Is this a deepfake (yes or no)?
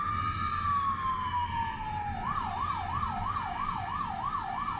no